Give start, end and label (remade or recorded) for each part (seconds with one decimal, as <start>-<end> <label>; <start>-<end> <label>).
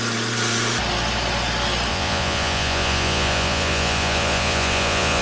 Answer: 0.0-1.9 recorded; 1.9-5.2 remade